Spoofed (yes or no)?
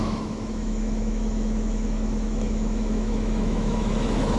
yes